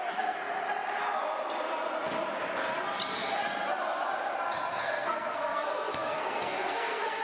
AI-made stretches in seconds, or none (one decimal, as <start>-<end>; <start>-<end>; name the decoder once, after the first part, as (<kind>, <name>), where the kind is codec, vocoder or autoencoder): 0.0-0.4 (codec, SNAC); 4.7-7.2